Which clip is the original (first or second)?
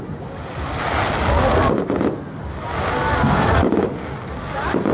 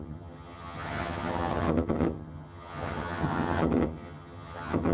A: first